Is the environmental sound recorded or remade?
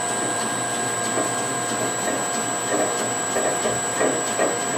recorded